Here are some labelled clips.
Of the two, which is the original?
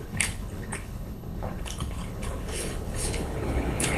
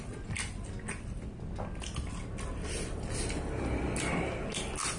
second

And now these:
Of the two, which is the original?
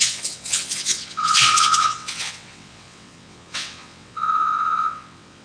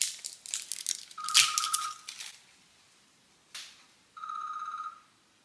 second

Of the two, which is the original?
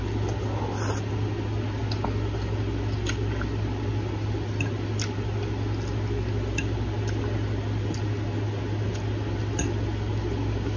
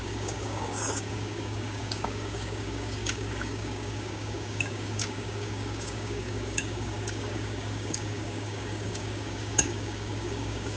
first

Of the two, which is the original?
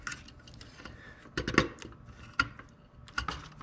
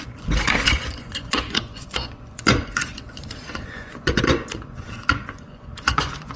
first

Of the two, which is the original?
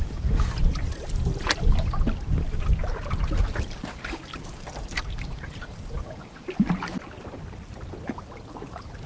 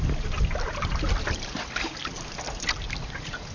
second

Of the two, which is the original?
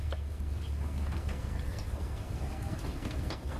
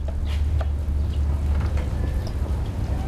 second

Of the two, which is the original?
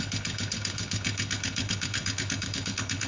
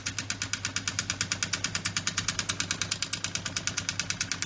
second